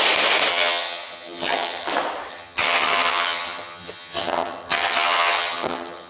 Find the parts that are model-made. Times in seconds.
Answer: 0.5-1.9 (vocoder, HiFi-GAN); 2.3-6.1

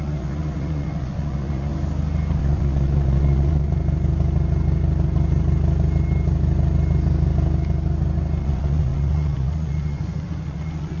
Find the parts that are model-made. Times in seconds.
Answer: 0.0-1.7 (vocoder, Vocos); 2.4-3.7; 8.4-11.0

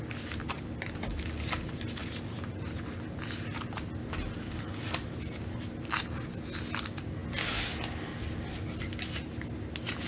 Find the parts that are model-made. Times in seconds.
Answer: none